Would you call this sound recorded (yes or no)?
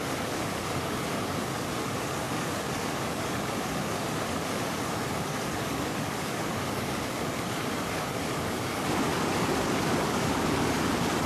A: no